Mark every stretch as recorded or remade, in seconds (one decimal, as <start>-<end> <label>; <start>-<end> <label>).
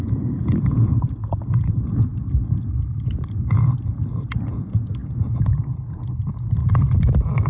0.0-2.1 remade; 2.1-4.5 recorded; 4.5-6.6 remade; 6.6-7.5 recorded